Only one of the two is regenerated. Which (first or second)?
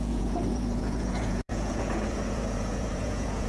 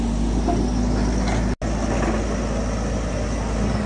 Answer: first